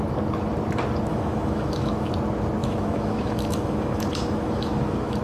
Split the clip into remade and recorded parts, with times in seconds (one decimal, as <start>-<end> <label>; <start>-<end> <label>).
0.0-1.1 recorded; 1.1-2.1 remade; 2.1-2.6 recorded; 2.6-5.2 remade